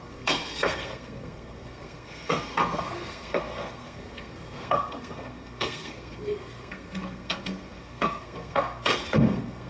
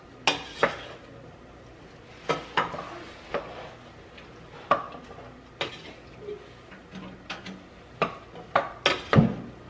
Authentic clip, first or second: second